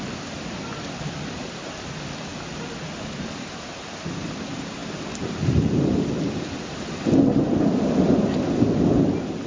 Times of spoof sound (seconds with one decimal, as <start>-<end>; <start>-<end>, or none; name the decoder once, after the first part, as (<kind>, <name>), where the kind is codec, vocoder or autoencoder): 4.8-7.0 (vocoder, BigVGAN v2)